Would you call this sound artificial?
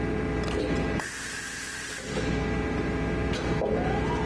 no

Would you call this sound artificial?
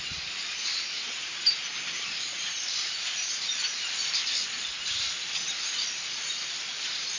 yes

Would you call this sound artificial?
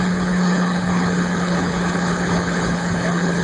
yes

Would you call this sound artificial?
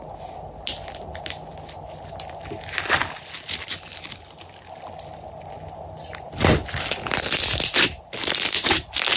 no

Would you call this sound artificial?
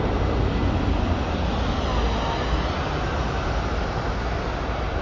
no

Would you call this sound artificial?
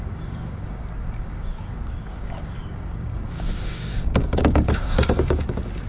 yes